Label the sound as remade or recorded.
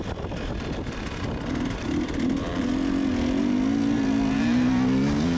recorded